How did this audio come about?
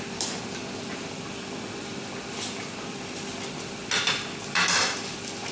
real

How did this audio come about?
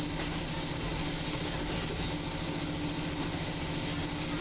real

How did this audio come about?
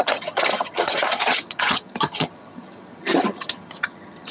fake